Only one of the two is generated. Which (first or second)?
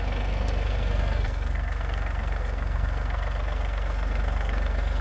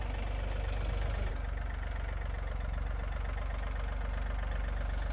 first